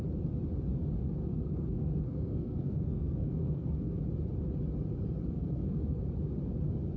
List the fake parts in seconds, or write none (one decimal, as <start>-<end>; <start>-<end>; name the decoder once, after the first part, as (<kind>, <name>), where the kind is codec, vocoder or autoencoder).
1.2-4.0 (codec, SNAC); 5.2-6.0